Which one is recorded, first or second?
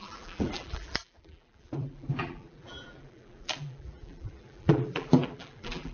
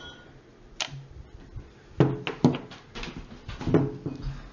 second